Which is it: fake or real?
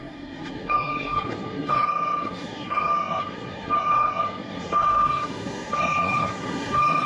fake